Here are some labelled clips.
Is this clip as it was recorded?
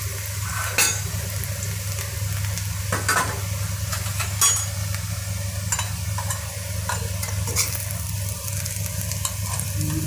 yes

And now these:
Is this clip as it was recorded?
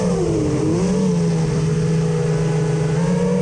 yes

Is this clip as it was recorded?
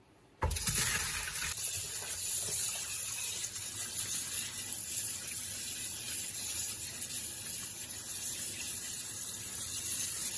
yes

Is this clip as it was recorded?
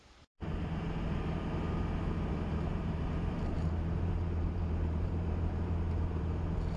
no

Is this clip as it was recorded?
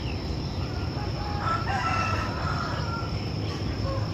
yes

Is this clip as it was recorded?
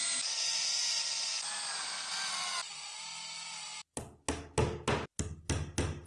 yes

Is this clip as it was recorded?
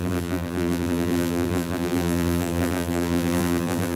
no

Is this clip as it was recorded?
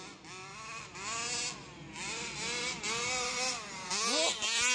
yes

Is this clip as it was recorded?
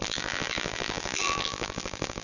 no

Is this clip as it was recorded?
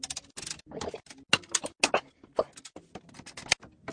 yes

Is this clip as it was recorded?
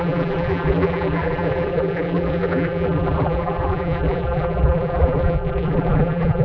no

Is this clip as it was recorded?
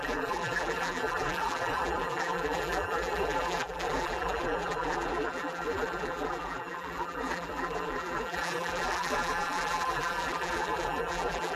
no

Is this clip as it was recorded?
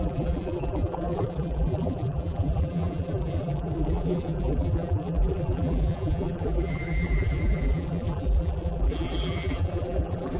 no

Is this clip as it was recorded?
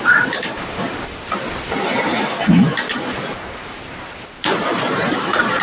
no